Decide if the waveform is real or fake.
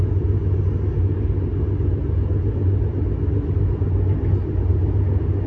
real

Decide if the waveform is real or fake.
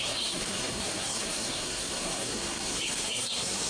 fake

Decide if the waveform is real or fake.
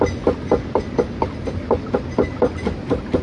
real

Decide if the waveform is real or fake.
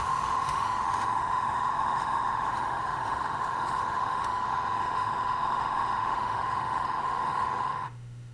fake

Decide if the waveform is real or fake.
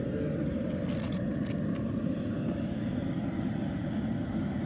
real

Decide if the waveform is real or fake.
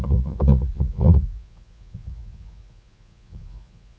fake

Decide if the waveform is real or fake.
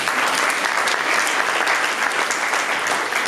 real